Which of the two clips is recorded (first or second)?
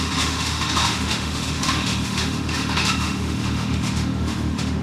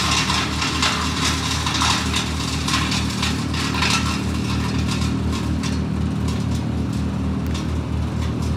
second